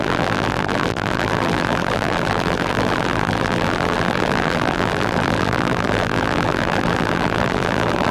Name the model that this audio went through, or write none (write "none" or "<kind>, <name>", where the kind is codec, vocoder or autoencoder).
vocoder, BigVGAN v2